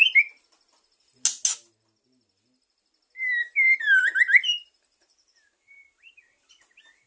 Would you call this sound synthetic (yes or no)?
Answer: no